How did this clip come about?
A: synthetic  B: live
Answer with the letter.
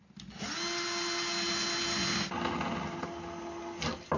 B